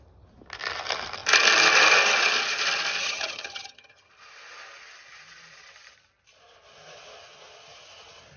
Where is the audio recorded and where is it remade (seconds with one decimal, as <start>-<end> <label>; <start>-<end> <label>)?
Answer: 0.0-3.0 recorded; 3.0-4.1 remade; 4.1-8.4 recorded